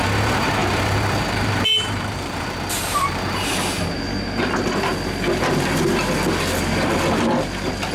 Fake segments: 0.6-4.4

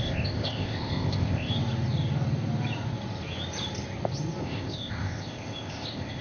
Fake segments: 0.0-1.5; 4.4-6.2

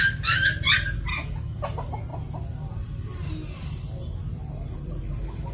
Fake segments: 1.1-1.6

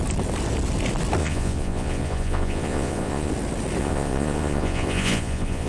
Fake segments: 1.2-3.3; 3.8-5.7

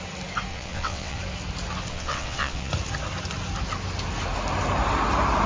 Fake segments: 0.5-1.2; 1.9-2.7

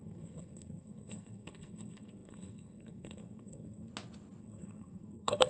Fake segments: 0.0-3.9; 4.4-5.5

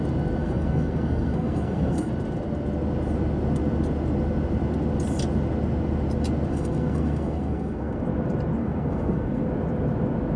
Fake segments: 0.4-2.1; 6.5-8.0; 8.6-9.5

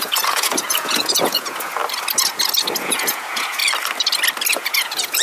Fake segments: 0.0-1.8; 2.8-3.6; 4.5-5.2